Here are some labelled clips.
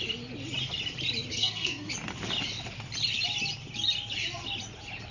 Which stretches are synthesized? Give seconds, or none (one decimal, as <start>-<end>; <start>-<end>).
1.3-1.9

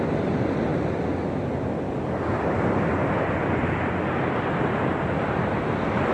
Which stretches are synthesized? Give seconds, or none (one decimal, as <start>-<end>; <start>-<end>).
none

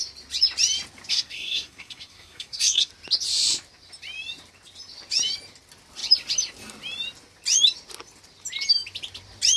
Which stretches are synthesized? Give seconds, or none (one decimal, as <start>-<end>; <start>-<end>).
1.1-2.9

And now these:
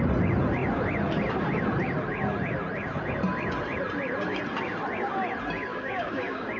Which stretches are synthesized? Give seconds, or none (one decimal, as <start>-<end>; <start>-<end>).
5.7-6.6